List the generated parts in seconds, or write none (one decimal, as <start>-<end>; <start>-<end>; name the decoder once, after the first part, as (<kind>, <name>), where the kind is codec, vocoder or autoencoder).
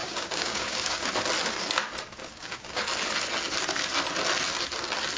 0.0-1.1 (codec, DAC); 2.1-2.8